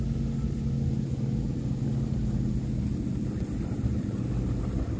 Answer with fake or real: real